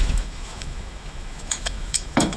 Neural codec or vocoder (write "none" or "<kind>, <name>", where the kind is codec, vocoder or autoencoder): autoencoder, DAC-VAE